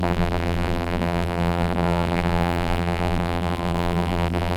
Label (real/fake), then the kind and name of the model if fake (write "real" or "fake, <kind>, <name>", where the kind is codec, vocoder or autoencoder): fake, vocoder, BigVGAN v2